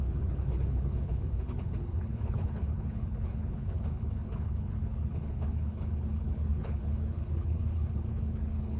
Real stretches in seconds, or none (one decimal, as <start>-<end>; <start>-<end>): none